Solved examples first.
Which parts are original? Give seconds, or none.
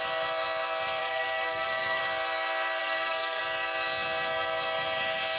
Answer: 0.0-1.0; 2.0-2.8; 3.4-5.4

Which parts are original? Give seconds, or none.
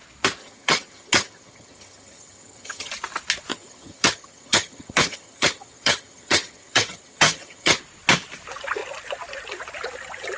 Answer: 0.0-0.4; 2.9-3.5; 7.8-10.4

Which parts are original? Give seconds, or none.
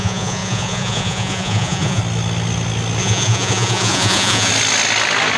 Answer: 2.0-3.0; 4.5-5.4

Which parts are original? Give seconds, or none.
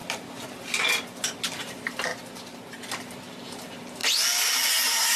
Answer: 2.1-2.9; 4.0-5.2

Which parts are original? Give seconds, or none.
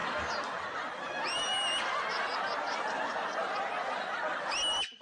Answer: 0.0-5.0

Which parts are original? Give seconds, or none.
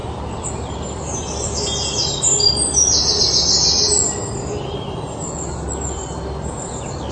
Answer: 0.0-7.1